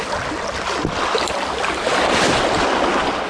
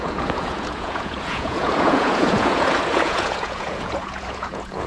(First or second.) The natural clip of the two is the first